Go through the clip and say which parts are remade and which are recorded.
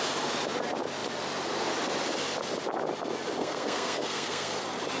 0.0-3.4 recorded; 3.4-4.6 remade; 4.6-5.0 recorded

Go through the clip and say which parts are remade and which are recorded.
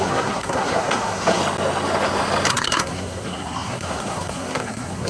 0.0-1.4 remade; 1.4-2.5 recorded; 2.5-5.1 remade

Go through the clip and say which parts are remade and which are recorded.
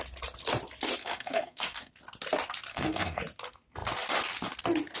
0.0-1.0 recorded; 1.0-1.9 remade; 1.9-2.7 recorded; 2.7-3.2 remade; 3.2-5.0 recorded